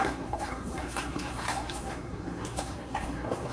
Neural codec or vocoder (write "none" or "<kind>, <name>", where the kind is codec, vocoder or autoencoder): codec, SNAC